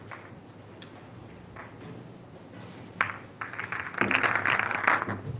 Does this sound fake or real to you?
real